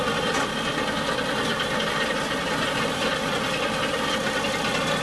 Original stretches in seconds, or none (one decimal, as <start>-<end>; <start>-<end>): 0.0-5.0